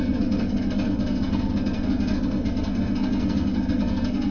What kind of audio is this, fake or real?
fake